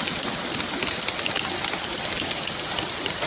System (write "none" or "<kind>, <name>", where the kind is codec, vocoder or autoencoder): none